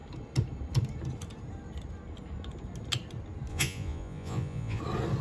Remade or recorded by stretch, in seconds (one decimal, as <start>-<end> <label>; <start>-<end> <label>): 0.0-3.5 recorded; 3.5-4.8 remade; 4.8-5.2 recorded